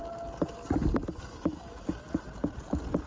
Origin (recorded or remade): recorded